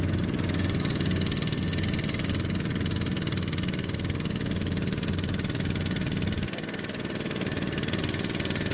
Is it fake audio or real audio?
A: real